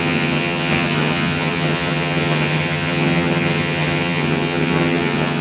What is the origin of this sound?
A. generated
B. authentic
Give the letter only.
A